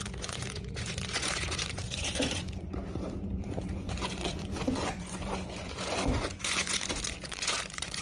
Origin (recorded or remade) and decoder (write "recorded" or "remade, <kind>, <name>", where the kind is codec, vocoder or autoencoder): remade, vocoder, Vocos